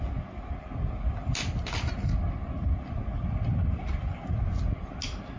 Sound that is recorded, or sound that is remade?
recorded